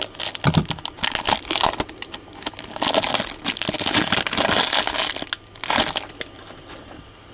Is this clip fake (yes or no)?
no